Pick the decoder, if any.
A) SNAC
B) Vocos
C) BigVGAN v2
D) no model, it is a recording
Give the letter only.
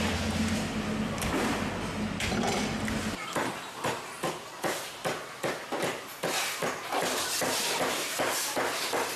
D